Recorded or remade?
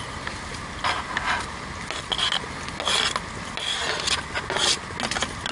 recorded